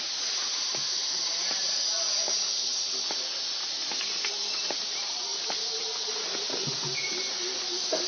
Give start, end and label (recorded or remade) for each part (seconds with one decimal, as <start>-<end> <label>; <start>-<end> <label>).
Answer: 0.0-8.1 recorded

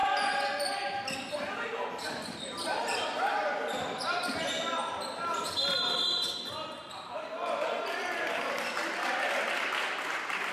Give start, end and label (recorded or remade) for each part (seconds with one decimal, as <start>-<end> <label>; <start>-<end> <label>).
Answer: 0.0-10.5 recorded

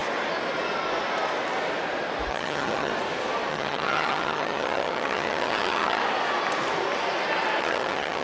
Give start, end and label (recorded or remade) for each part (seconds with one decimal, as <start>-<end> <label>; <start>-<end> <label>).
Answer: 0.0-2.3 recorded; 2.3-2.9 remade; 2.9-3.5 recorded; 3.5-6.0 remade; 6.0-7.6 recorded; 7.6-8.2 remade

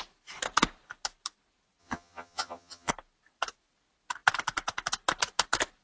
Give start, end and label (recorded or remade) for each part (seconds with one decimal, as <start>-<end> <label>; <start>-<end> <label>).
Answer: 0.0-1.8 recorded; 1.8-2.9 remade; 2.9-5.8 recorded

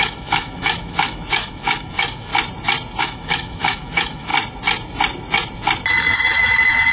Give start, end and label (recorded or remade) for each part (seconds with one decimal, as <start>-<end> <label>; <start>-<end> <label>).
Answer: 0.0-2.3 remade; 2.3-3.0 recorded; 3.0-4.3 remade; 4.3-5.9 recorded; 5.9-6.9 remade

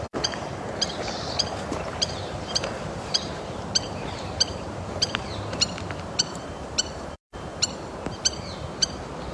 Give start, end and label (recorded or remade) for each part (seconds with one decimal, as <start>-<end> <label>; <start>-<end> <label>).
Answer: 0.0-7.5 remade; 7.5-9.3 recorded